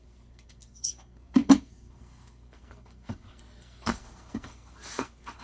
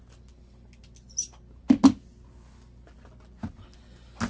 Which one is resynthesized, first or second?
first